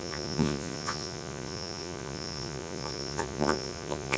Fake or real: fake